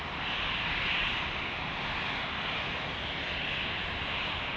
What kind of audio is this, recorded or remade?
recorded